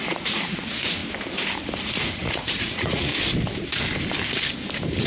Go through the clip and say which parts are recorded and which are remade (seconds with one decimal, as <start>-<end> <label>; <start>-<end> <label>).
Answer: 0.0-1.0 remade; 1.0-1.8 recorded; 1.8-3.1 remade; 3.1-5.1 recorded

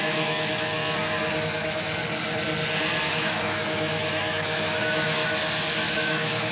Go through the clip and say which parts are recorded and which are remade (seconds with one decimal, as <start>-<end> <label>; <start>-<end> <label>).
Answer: 0.0-0.8 remade; 0.8-1.4 recorded; 1.4-2.0 remade; 2.0-3.1 recorded; 3.1-5.2 remade; 5.2-5.9 recorded; 5.9-6.5 remade

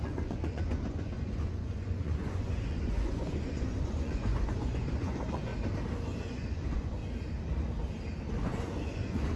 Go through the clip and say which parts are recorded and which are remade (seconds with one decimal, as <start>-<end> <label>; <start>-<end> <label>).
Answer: 0.0-5.5 remade; 5.5-6.3 recorded; 6.3-7.0 remade; 7.0-8.4 recorded; 8.4-9.4 remade

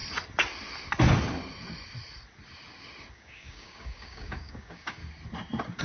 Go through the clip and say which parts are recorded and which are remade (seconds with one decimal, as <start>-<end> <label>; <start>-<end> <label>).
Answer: 0.0-3.1 recorded; 3.1-5.0 remade; 5.0-5.8 recorded

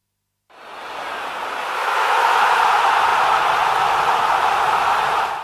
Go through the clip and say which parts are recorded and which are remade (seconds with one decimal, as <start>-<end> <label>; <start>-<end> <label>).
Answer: 0.0-1.8 recorded; 1.8-2.6 remade; 2.6-5.4 recorded